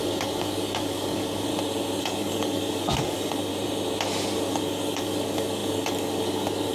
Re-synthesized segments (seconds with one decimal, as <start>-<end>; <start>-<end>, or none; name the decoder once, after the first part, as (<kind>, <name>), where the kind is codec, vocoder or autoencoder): 0.0-1.5 (codec, DAC); 2.0-3.5; 4.5-6.7